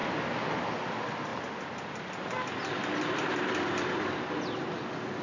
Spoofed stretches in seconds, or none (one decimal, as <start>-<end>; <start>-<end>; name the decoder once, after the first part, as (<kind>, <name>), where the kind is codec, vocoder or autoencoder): none